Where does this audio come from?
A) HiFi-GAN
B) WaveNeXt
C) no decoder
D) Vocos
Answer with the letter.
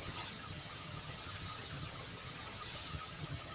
A